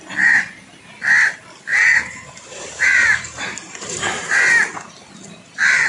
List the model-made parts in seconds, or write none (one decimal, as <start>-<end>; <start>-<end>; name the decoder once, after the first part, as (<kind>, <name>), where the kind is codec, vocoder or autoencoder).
1.7-4.4 (vocoder, BigVGAN v2)